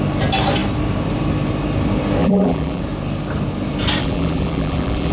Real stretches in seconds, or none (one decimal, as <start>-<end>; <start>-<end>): 0.0-2.2; 2.8-4.0